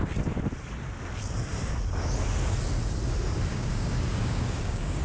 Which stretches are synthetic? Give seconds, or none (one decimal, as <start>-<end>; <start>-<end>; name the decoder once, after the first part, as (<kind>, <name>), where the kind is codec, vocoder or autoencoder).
3.5-5.0 (codec, DAC)